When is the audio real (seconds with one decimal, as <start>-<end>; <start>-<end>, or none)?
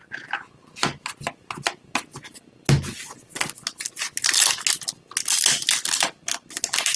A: 0.0-7.0